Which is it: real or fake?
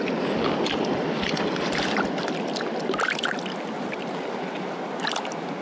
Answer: real